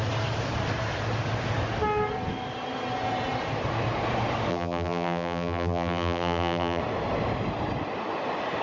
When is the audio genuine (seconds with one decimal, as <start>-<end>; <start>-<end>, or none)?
0.0-4.5; 6.8-8.6